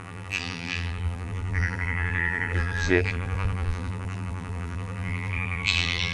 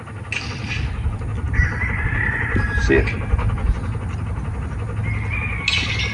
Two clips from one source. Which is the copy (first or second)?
first